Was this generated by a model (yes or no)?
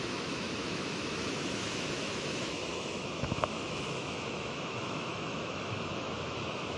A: yes